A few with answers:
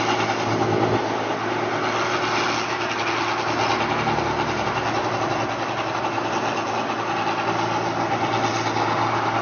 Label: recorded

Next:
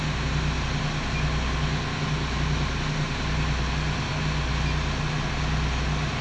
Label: recorded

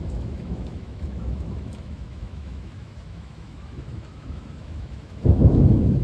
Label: remade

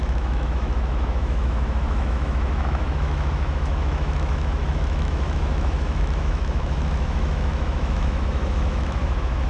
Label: remade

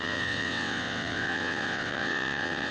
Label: remade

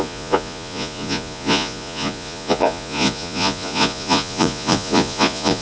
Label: remade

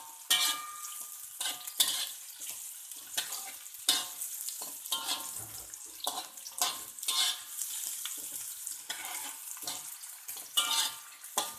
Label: recorded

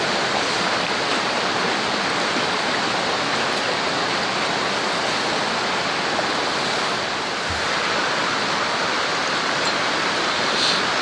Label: recorded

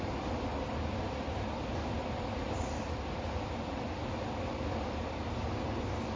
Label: recorded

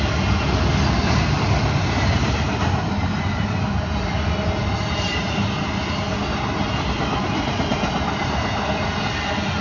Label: recorded